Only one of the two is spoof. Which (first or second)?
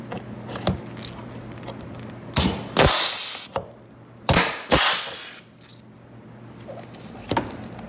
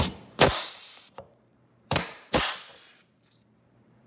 second